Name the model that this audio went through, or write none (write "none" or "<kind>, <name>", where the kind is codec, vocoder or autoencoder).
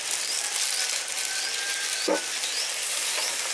none